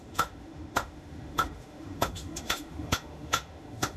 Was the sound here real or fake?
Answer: fake